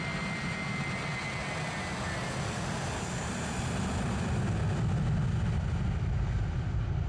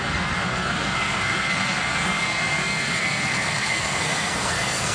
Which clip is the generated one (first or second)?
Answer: second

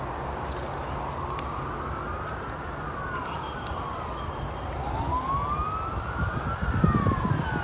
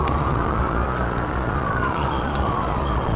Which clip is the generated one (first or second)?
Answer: second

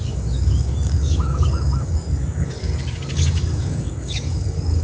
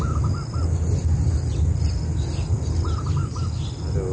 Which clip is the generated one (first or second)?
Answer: first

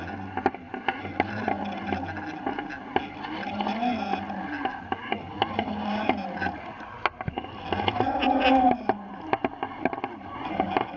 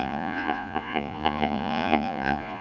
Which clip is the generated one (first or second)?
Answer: second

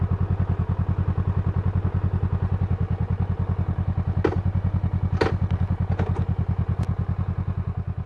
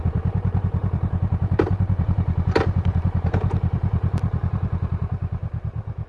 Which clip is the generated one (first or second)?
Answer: second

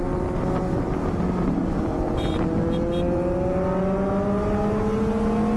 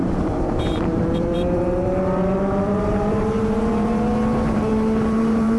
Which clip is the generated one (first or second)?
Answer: second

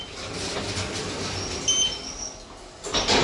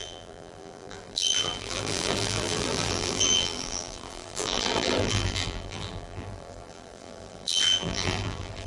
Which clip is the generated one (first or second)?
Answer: second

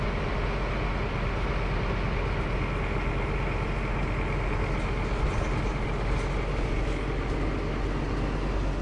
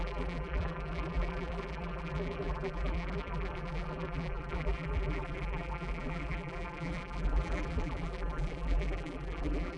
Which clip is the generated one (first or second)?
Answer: second